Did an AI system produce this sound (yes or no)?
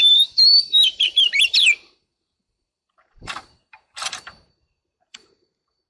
yes